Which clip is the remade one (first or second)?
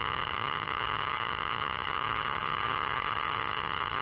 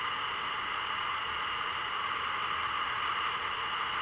first